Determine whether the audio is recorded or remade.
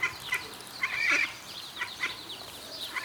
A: remade